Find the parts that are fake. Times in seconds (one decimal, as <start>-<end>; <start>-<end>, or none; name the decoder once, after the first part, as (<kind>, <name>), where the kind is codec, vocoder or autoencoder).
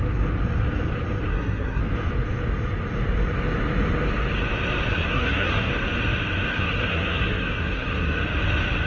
1.3-1.8 (codec, SNAC); 4.9-5.7; 6.5-8.2